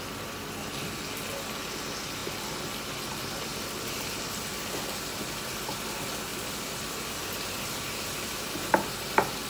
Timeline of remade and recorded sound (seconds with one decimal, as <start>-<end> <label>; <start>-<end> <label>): 0.0-3.5 recorded; 3.5-4.4 remade; 4.4-6.3 recorded; 6.3-9.5 remade